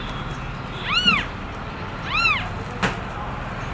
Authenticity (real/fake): real